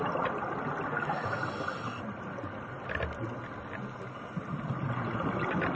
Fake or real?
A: real